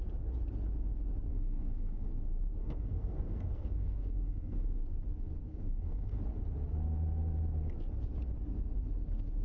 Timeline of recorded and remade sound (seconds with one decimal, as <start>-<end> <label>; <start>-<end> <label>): 0.0-1.3 recorded; 1.3-2.1 remade; 2.1-2.6 recorded; 2.6-4.8 remade; 4.8-5.5 recorded; 5.5-6.2 remade; 6.2-9.4 recorded